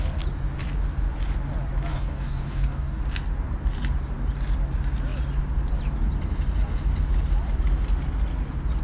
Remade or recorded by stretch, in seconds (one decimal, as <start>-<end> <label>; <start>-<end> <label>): 0.0-1.9 recorded; 1.9-3.0 remade; 3.0-8.8 recorded